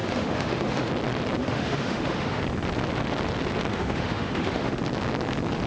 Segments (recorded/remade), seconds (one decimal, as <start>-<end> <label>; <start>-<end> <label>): 0.0-0.9 remade; 0.9-1.4 recorded; 1.4-2.4 remade; 2.4-3.7 recorded; 3.7-4.8 remade; 4.8-5.7 recorded